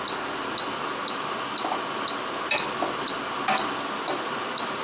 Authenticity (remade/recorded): recorded